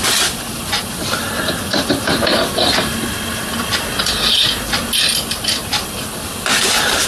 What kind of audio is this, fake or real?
real